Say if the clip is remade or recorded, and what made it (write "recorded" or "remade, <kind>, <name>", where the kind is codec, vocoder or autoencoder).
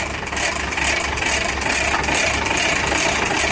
recorded